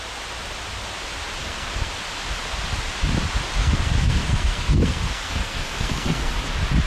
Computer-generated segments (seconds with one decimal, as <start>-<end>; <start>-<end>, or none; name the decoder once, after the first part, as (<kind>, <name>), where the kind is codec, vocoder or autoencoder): 1.4-1.9 (codec, SNAC); 3.6-6.3